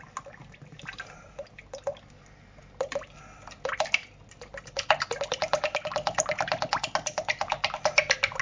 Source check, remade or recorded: recorded